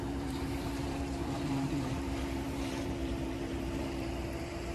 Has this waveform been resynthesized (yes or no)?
yes